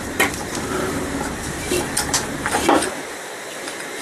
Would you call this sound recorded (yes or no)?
no